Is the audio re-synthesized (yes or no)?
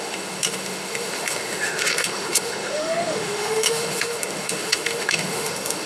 yes